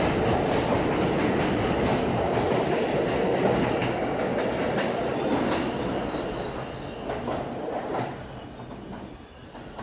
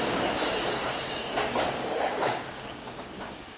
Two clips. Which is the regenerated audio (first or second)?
second